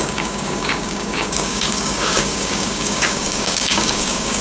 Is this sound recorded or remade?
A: remade